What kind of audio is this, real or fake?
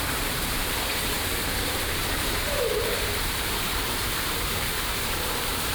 fake